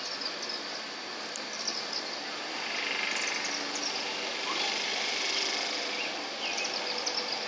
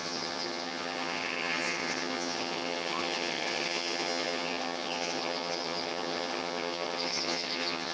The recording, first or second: first